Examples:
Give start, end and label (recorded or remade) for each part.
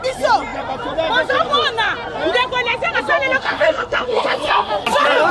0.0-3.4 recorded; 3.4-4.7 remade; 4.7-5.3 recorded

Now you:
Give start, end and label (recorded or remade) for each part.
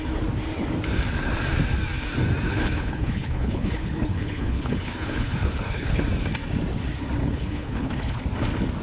0.0-2.5 recorded; 2.5-6.0 remade; 6.0-7.2 recorded; 7.2-8.2 remade; 8.2-8.8 recorded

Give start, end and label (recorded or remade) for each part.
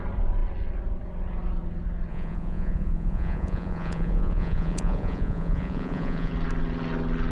0.0-2.1 recorded; 2.1-6.3 remade; 6.3-7.3 recorded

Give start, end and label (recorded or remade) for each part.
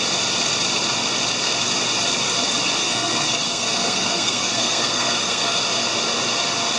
0.0-2.8 recorded; 2.8-5.6 remade; 5.6-6.8 recorded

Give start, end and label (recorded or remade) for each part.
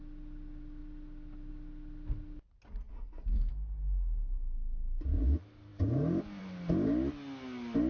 0.0-2.9 recorded; 2.9-3.5 remade; 3.5-7.9 recorded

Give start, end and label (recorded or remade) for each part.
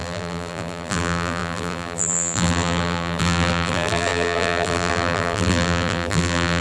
0.0-6.6 remade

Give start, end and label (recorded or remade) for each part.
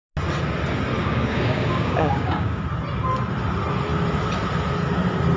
0.0-1.0 recorded; 1.0-2.6 remade; 2.6-5.4 recorded